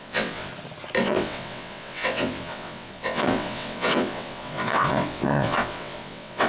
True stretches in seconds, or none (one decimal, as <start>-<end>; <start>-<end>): 0.5-1.0